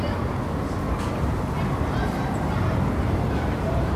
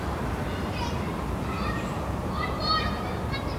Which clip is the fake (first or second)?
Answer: second